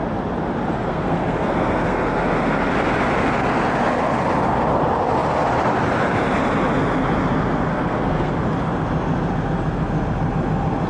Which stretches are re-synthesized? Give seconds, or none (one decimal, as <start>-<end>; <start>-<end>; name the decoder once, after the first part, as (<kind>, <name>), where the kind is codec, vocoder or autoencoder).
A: 0.9-2.0 (codec, SNAC); 7.7-8.3